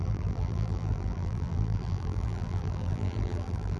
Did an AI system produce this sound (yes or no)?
yes